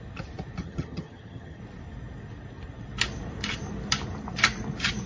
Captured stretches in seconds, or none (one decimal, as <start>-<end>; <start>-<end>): 0.0-0.6; 1.6-5.1